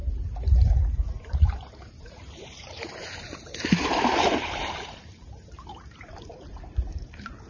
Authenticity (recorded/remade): remade